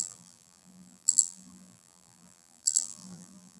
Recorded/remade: remade